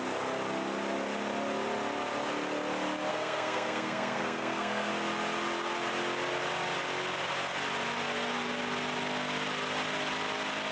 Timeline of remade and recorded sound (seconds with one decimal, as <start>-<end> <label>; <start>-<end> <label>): 0.0-3.1 recorded; 3.1-4.9 remade; 4.9-10.7 recorded